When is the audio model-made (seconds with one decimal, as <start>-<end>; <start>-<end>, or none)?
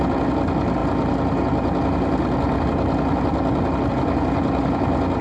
none